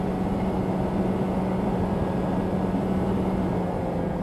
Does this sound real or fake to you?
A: real